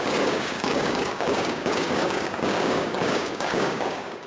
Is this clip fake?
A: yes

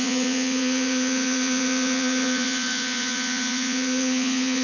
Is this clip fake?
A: yes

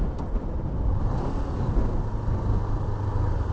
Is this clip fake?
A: no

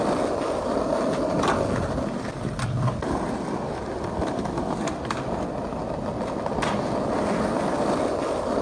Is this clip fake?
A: no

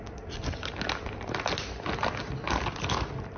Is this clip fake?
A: no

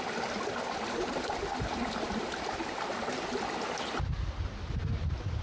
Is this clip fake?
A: no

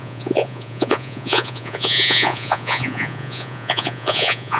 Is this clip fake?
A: yes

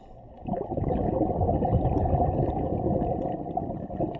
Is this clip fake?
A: no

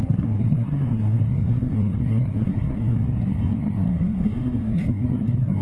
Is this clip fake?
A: yes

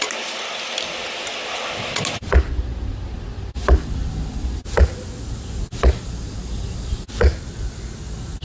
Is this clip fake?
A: no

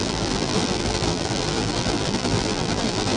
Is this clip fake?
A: yes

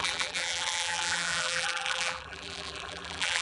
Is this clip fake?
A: yes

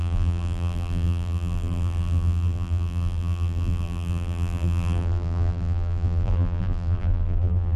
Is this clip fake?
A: yes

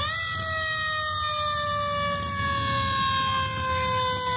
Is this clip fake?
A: no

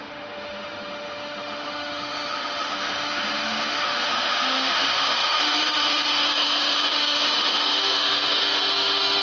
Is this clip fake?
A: yes